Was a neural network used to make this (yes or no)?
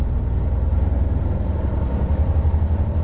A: yes